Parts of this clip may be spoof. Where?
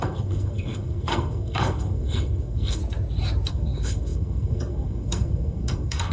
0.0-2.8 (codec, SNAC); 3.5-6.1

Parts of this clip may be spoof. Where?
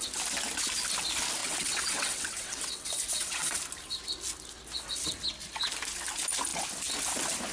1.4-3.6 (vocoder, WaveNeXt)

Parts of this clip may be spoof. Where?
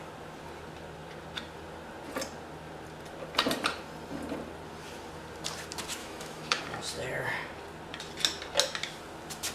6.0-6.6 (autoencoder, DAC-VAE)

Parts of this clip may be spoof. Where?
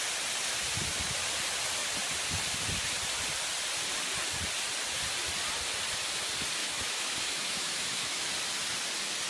6.6-8.3 (autoencoder, DAC-VAE)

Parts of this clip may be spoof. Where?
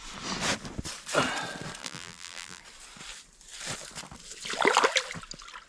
1.8-2.6 (vocoder, BigVGAN v2)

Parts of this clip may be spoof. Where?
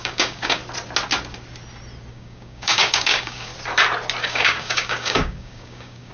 0.0-0.6 (codec, DAC); 2.1-3.5; 4.2-6.1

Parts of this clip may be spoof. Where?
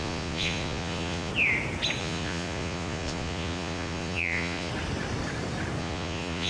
0.0-1.3 (vocoder, Vocos); 2.0-4.7; 5.8-6.5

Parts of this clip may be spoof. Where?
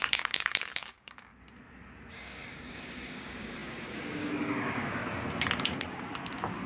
0.0-1.3 (codec, DAC); 2.1-5.0